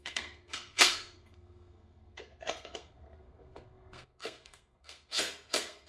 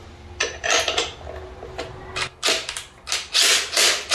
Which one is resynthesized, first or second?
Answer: first